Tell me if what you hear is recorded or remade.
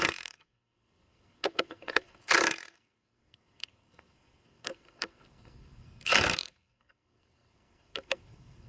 remade